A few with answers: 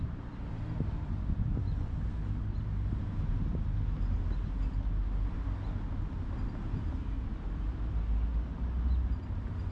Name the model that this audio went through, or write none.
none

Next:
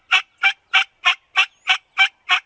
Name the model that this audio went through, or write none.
none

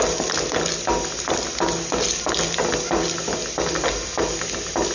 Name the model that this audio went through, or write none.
none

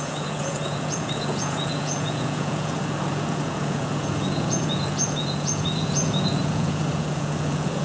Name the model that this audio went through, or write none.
vocoder, Vocos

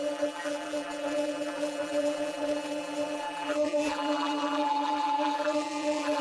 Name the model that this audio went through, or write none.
vocoder, BigVGAN v2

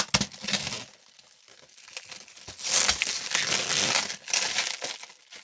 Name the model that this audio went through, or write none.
none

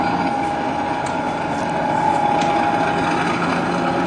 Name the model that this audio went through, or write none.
none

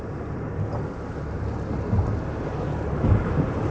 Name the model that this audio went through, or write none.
none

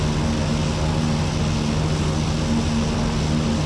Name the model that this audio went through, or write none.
none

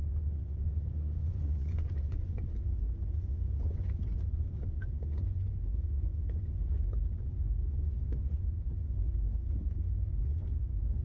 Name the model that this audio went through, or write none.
vocoder, Vocos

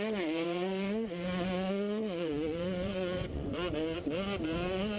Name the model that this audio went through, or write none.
vocoder, Vocos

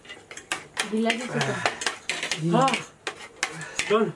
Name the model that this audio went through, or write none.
none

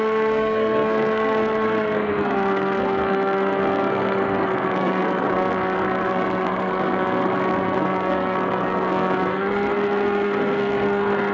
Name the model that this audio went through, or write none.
codec, SNAC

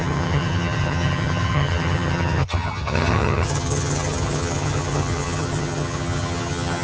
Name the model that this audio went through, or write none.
vocoder, HiFi-GAN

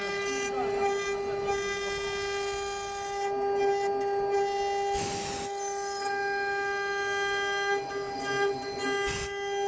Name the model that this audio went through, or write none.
none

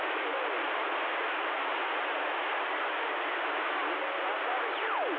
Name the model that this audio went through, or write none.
none